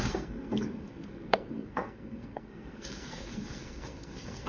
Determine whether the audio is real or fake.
fake